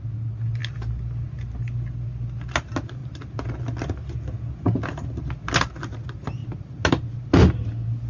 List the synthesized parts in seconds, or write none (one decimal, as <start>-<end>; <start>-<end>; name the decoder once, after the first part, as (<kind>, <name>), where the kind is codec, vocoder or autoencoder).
none

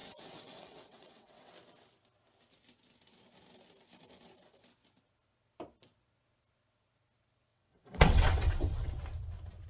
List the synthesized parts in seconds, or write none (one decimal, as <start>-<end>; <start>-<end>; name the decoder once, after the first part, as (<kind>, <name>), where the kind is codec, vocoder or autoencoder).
0.0-1.5 (vocoder, WaveNeXt); 7.5-8.9

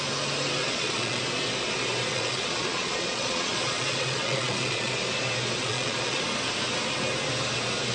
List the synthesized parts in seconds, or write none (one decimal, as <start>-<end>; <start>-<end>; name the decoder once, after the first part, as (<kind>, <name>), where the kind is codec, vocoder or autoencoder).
0.6-1.2 (vocoder, Vocos); 2.1-4.9; 5.6-6.2

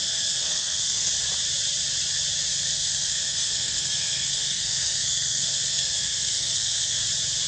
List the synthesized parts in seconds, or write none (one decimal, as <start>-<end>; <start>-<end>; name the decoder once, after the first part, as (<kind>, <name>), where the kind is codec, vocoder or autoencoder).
0.0-1.1 (codec, SNAC); 2.5-7.0

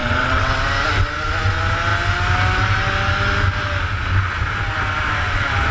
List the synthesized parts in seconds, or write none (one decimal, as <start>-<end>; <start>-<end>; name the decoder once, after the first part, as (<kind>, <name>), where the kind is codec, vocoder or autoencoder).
0.0-0.6 (vocoder, WaveNeXt)

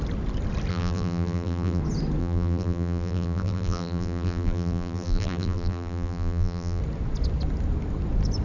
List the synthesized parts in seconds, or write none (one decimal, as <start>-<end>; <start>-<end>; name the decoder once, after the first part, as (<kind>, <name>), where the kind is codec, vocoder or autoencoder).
0.7-1.8 (vocoder, BigVGAN v2); 2.2-6.8

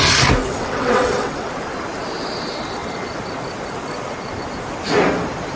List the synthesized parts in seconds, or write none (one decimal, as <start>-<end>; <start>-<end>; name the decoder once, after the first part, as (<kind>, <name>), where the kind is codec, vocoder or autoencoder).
0.5-1.5 (vocoder, WaveNeXt)